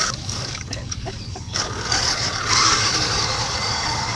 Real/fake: fake